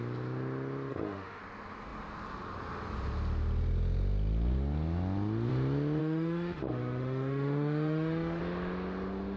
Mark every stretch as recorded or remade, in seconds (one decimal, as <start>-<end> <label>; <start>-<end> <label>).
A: 0.0-0.9 recorded; 0.9-1.4 remade; 1.4-6.0 recorded; 6.0-8.4 remade; 8.4-9.4 recorded